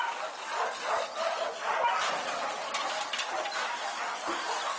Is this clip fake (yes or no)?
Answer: no